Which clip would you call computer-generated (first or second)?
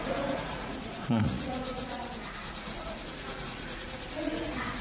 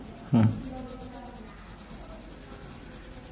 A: first